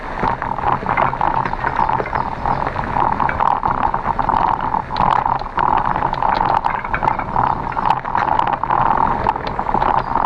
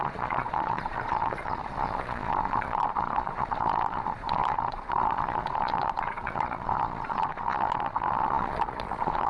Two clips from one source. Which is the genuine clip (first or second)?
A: first